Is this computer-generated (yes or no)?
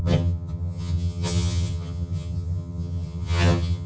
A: yes